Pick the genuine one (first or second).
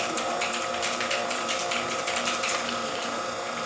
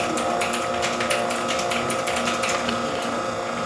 second